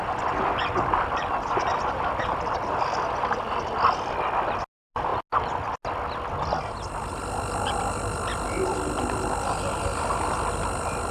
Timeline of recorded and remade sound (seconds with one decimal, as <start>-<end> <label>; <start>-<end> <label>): 0.0-11.1 recorded